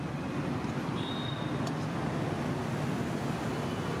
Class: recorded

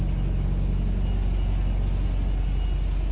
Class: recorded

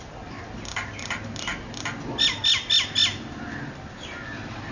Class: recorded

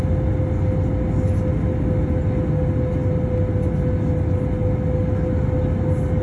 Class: recorded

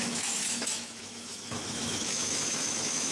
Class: remade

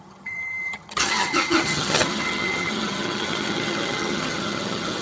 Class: remade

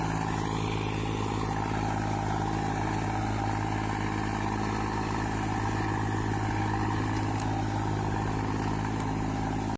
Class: recorded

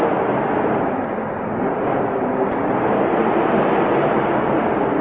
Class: recorded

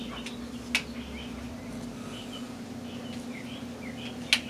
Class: recorded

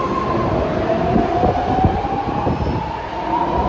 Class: recorded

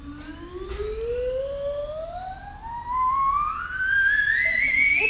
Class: recorded